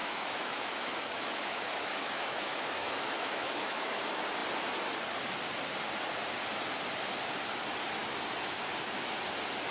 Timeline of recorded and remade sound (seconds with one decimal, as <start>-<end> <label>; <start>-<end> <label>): 0.0-4.0 remade; 4.0-9.7 recorded